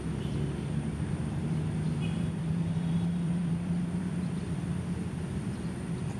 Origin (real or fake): fake